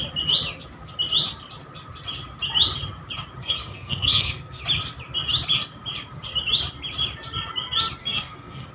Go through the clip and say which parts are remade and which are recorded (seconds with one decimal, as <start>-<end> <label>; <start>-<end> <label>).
0.0-3.4 recorded; 3.4-4.6 remade; 4.6-8.0 recorded; 8.0-8.7 remade